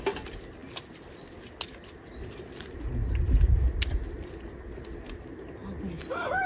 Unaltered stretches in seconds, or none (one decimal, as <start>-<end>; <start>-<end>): 0.0-6.5